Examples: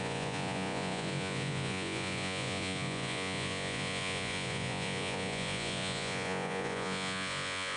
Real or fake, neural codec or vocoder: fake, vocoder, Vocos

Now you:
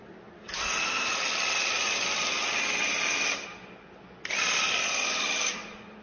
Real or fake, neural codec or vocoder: real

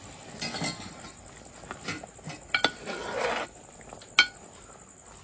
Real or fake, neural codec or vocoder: real